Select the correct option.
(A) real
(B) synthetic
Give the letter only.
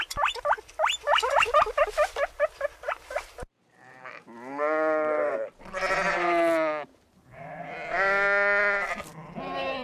A